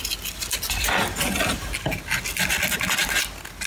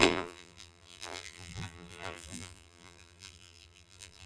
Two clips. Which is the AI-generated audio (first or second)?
second